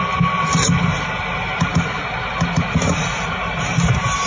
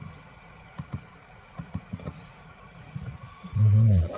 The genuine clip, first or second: first